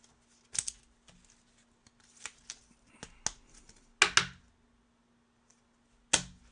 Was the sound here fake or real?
real